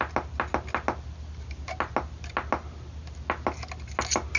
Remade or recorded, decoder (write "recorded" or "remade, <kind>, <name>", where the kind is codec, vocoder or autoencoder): recorded